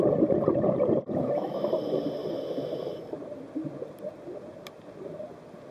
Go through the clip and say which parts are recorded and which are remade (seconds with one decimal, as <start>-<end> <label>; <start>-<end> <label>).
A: 0.0-1.2 recorded; 1.2-1.7 remade; 1.7-5.7 recorded